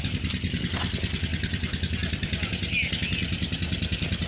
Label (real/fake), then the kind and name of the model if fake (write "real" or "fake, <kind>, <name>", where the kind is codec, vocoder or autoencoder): real